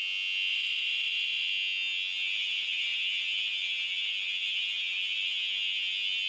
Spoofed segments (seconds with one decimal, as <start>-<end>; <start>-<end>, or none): 0.5-1.5